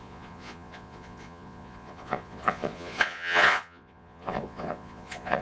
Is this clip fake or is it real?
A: fake